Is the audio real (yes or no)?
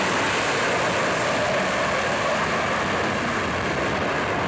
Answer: yes